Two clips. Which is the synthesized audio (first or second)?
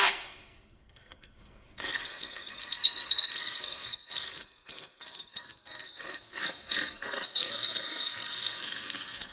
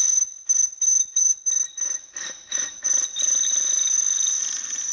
first